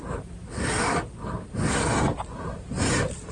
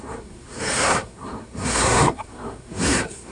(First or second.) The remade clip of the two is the second